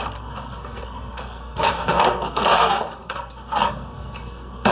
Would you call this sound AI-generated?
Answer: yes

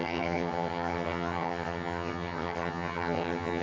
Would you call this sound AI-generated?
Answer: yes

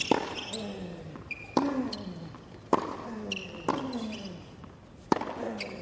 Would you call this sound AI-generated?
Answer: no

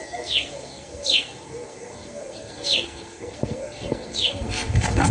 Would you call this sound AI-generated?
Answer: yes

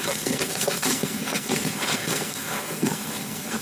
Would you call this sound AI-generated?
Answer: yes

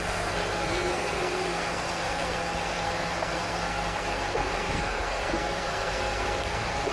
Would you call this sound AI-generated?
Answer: yes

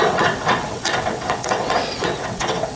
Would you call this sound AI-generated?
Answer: yes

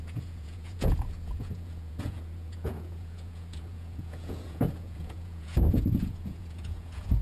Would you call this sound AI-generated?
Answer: yes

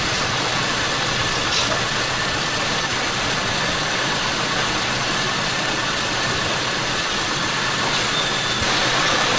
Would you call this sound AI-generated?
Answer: yes